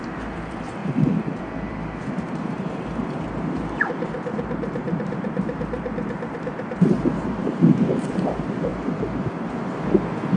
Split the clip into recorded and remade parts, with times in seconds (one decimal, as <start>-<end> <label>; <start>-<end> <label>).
0.0-0.8 remade; 0.8-1.7 recorded; 1.7-8.7 remade; 8.7-10.4 recorded